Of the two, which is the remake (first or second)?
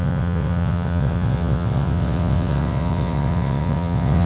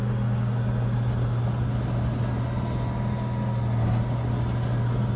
first